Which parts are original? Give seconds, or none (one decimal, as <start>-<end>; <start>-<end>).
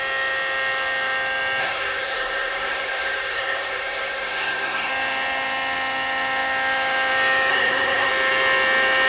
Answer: 0.0-1.6; 4.9-7.5; 8.1-9.1